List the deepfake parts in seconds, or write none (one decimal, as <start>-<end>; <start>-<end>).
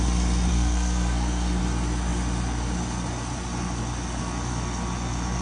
0.5-1.6